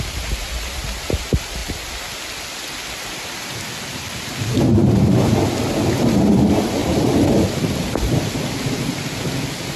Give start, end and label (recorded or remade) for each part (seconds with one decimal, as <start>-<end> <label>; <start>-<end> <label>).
0.0-6.8 recorded; 6.8-8.8 remade; 8.8-9.8 recorded